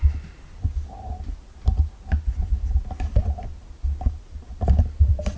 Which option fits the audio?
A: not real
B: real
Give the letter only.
B